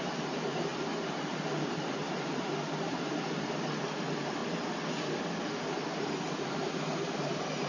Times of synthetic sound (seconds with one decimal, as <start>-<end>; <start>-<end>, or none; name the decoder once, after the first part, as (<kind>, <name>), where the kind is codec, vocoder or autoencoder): 0.0-4.4 (vocoder, BigVGAN v2); 6.0-7.7